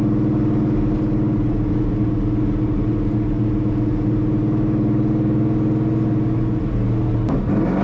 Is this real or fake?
real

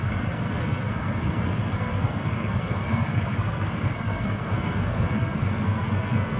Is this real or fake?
fake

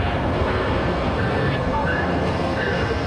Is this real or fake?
fake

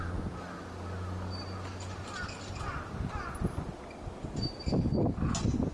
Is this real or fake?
real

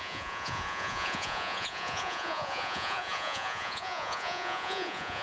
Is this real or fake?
fake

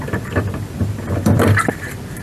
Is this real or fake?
fake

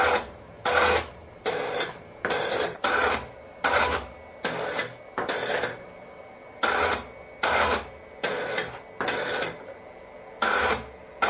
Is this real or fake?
real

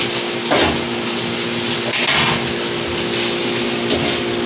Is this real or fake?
real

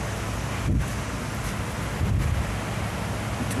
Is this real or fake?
real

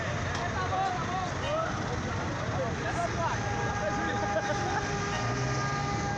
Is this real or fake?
real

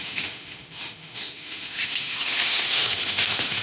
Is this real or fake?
fake